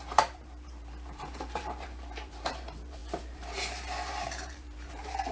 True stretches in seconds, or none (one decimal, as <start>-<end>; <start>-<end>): none